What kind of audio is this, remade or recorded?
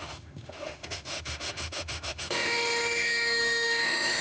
remade